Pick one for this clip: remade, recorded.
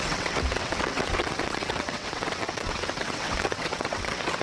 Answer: remade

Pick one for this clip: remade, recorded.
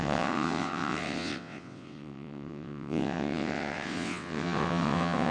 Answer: remade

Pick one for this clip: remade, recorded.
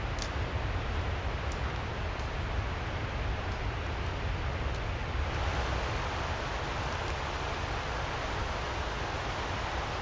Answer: recorded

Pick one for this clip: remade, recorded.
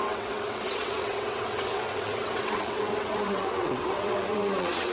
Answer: remade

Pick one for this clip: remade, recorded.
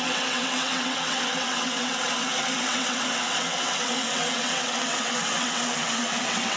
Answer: remade